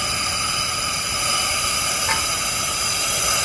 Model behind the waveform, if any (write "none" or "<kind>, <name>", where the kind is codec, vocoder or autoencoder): none